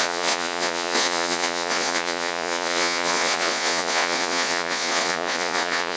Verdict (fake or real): fake